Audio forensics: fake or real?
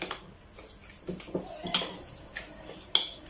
real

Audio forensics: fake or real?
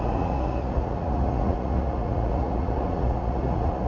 fake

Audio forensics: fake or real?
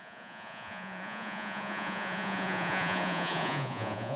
fake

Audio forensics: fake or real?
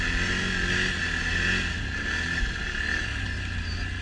real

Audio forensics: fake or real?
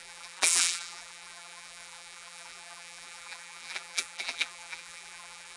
fake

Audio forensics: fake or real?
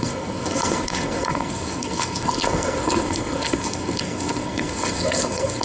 fake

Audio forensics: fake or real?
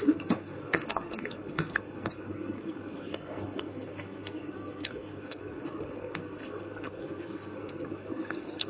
fake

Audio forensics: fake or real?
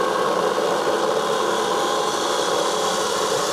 real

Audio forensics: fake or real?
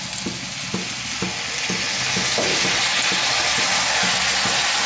real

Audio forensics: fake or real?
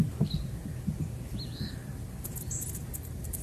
real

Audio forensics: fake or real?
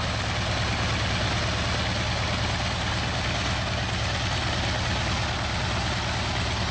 real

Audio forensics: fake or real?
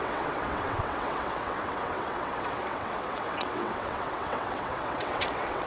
fake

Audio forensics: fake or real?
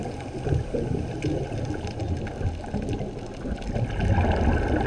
real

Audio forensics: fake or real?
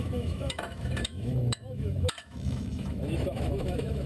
fake